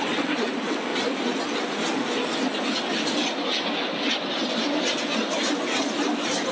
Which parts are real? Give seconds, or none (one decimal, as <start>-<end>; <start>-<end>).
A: 0.9-4.6; 5.1-6.5